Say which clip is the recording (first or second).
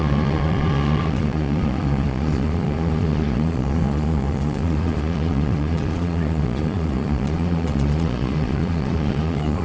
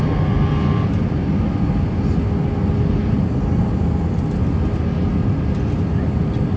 second